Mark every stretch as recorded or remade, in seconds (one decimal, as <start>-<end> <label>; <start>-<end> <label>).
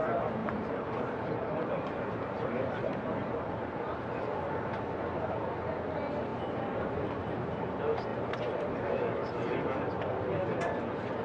0.0-0.4 recorded; 0.4-4.8 remade; 4.8-6.3 recorded; 6.3-6.9 remade; 6.9-8.1 recorded; 8.1-8.7 remade; 8.7-11.2 recorded